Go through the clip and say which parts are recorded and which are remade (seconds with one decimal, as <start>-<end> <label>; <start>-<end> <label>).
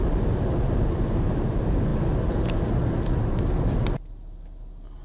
0.0-5.0 recorded